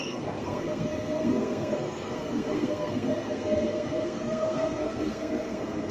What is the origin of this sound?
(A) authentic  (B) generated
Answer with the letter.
B